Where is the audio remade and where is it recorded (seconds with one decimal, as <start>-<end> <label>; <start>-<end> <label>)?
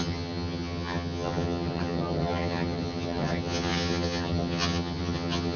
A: 0.0-5.6 remade